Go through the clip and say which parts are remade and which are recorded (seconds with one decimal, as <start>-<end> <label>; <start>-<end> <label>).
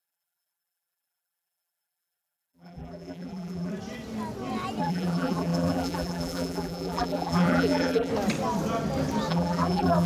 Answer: 0.0-3.7 remade; 3.7-4.8 recorded; 4.8-8.1 remade; 8.1-9.3 recorded; 9.3-10.1 remade